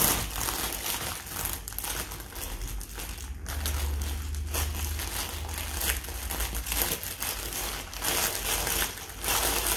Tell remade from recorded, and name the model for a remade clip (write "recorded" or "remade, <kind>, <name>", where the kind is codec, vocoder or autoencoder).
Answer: recorded